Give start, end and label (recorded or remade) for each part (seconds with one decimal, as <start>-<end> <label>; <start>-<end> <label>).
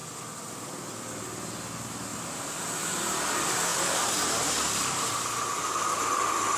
0.0-2.1 recorded; 2.1-3.2 remade; 3.2-3.7 recorded; 3.7-5.2 remade; 5.2-6.6 recorded